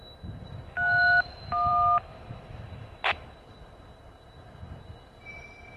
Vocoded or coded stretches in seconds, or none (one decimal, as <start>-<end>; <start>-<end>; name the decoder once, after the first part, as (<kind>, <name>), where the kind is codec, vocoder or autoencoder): none